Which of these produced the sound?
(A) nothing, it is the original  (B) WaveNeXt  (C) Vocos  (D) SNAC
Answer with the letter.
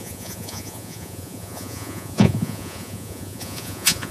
C